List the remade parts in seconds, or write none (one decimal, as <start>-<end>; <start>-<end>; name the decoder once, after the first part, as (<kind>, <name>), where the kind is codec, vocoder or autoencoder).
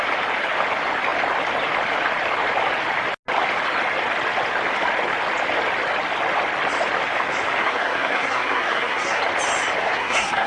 7.6-9.2 (codec, SNAC); 9.8-10.5